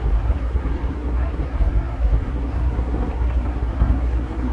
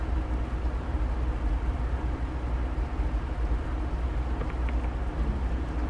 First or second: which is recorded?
second